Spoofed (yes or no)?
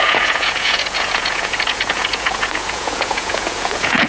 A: yes